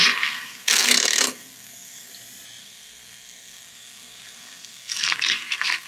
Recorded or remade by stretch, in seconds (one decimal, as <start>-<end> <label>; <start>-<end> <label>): 0.0-2.1 remade; 2.1-2.6 recorded; 2.6-5.9 remade

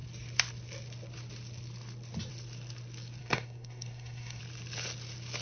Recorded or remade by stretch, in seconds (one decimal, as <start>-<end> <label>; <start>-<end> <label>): 0.0-3.2 recorded; 3.2-4.4 remade; 4.4-5.4 recorded

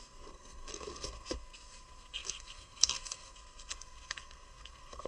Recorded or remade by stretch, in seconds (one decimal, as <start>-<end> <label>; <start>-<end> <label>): 0.0-5.1 remade

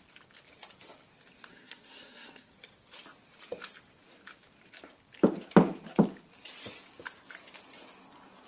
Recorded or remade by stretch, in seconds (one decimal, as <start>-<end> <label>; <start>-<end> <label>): 0.0-1.5 recorded; 1.5-2.5 remade; 2.5-8.5 recorded

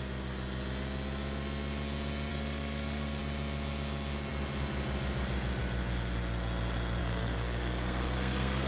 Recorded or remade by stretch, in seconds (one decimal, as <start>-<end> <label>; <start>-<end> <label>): 0.0-2.3 recorded; 2.3-3.2 remade; 3.2-7.0 recorded; 7.0-8.7 remade

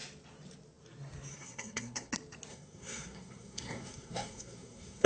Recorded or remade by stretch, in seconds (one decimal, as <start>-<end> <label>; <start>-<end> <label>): 0.0-1.3 recorded; 1.3-2.1 remade; 2.1-2.5 recorded; 2.5-5.1 remade

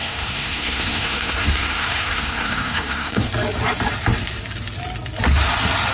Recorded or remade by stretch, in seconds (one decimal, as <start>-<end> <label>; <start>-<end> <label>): 0.0-3.3 remade; 3.3-5.9 recorded